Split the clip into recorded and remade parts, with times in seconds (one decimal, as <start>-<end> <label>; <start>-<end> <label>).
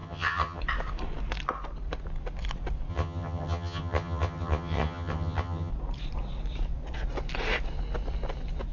0.0-0.6 remade; 0.6-2.9 recorded; 2.9-5.7 remade; 5.7-8.7 recorded